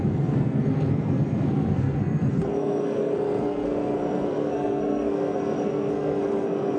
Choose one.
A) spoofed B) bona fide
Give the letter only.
A